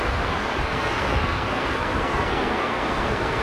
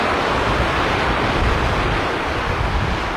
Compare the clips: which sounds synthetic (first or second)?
first